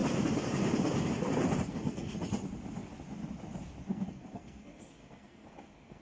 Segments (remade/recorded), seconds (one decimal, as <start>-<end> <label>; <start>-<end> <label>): 0.0-1.7 recorded; 1.7-2.1 remade; 2.1-3.9 recorded; 3.9-6.0 remade